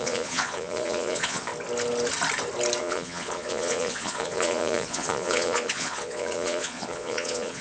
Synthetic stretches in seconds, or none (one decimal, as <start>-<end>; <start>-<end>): 0.0-1.5; 2.8-7.6